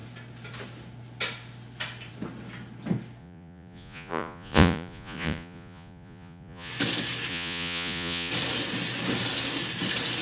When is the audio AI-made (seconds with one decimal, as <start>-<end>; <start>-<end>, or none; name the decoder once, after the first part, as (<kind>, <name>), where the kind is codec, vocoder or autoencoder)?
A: 3.2-6.7 (vocoder, Vocos); 7.3-8.3